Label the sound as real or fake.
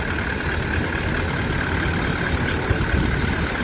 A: real